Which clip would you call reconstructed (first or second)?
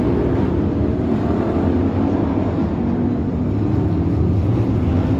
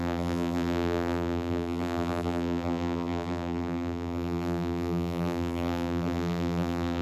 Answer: second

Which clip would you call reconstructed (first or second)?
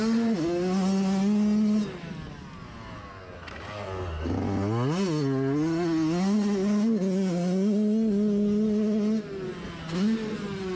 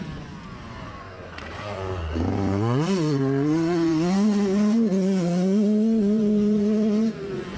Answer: second